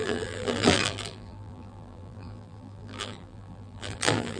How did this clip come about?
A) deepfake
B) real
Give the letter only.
A